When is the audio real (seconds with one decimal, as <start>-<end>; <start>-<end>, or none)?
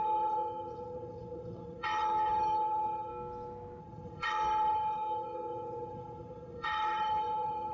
3.1-3.8